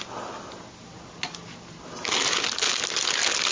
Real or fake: real